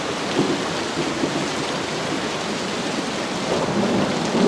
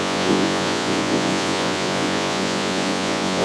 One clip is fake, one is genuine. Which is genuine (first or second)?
first